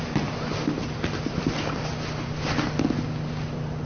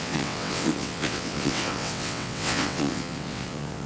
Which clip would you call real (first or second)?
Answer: first